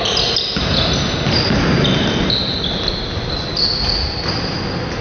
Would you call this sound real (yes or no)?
yes